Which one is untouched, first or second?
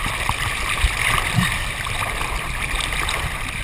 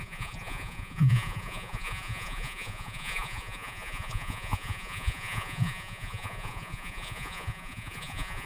first